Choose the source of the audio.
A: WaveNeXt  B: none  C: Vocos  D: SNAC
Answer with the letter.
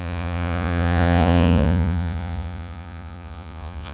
C